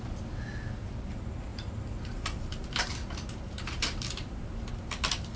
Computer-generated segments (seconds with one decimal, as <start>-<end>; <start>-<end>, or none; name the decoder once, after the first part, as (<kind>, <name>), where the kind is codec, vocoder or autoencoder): 1.5-4.7 (vocoder, BigVGAN v2)